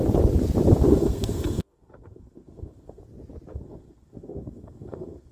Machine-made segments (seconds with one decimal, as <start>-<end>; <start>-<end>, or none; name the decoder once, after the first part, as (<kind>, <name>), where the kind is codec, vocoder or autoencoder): 0.9-3.0 (codec, SNAC); 3.5-5.3